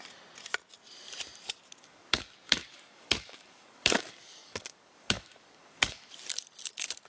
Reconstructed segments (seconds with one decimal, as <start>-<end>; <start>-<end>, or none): 1.8-6.1

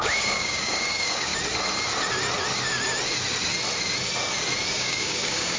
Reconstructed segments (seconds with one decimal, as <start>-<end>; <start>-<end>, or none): 0.0-1.3; 4.7-5.6